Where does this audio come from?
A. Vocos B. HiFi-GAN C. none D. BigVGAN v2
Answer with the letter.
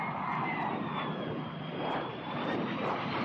D